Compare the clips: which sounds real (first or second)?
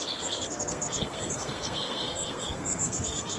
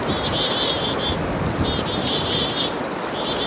second